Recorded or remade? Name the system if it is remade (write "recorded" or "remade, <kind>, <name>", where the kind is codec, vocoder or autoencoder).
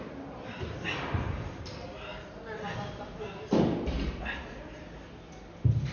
recorded